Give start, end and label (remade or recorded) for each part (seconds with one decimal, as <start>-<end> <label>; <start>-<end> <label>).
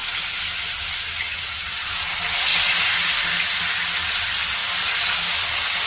0.0-2.5 recorded; 2.5-4.1 remade; 4.1-5.9 recorded